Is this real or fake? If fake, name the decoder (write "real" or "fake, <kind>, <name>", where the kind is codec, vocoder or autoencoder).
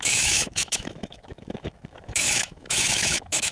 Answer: fake, autoencoder, DAC-VAE